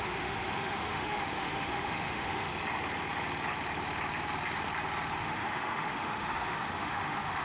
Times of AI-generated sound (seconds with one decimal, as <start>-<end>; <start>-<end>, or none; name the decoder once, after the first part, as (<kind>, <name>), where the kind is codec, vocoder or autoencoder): 0.0-2.5 (autoencoder, DAC-VAE); 5.2-7.4